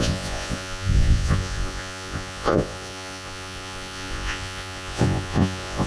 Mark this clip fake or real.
fake